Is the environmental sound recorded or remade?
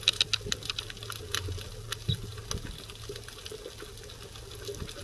recorded